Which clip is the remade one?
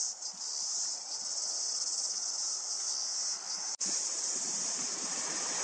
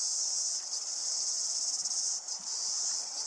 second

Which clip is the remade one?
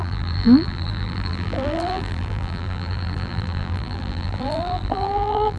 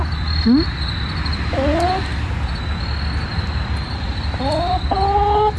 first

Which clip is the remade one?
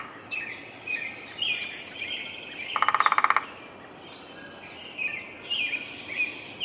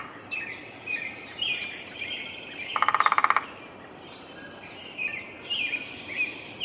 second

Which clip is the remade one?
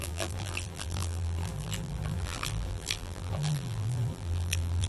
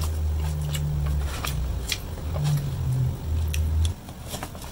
first